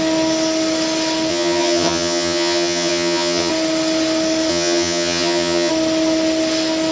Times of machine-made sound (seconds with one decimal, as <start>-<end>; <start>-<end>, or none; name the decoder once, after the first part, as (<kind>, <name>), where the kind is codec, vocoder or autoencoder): 1.3-3.5 (vocoder, HiFi-GAN); 4.5-5.7

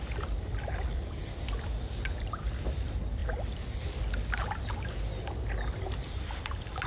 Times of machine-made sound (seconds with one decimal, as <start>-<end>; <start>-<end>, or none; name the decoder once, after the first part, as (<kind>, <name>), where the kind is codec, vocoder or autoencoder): 0.0-3.2 (vocoder, BigVGAN v2); 6.1-6.9

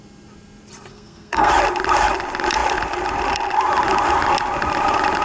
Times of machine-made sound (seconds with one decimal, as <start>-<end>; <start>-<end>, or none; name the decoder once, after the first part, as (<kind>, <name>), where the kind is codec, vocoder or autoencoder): 0.9-1.5 (codec, SNAC)

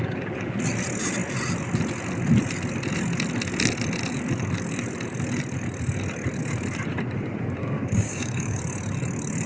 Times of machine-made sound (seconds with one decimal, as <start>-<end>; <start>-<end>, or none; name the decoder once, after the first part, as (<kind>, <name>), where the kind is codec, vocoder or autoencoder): 7.6-8.6 (codec, DAC)

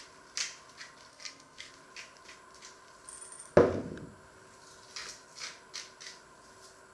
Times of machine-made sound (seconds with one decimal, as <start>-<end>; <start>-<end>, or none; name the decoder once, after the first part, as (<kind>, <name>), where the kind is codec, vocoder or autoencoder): 1.1-1.7 (codec, SNAC)